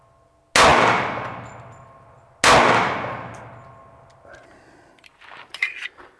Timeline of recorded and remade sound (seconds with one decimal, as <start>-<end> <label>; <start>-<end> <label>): 0.0-5.1 recorded; 5.1-5.7 remade; 5.7-6.2 recorded